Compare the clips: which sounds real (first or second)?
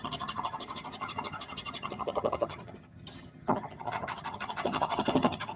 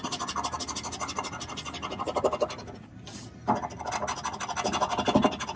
second